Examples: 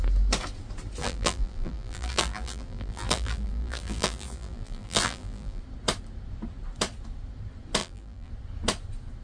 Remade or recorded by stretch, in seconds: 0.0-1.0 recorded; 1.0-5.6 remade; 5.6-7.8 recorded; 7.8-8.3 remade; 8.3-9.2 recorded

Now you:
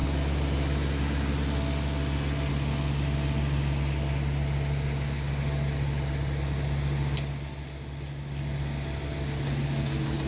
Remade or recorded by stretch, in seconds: 0.0-10.3 recorded

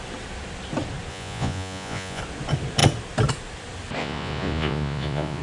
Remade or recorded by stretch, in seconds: 0.0-1.1 recorded; 1.1-2.2 remade; 2.2-4.0 recorded; 4.0-5.4 remade